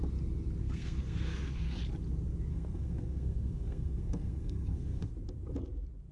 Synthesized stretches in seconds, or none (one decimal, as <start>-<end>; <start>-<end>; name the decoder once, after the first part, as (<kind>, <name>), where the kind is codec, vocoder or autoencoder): 0.6-1.8 (codec, SNAC); 2.5-5.1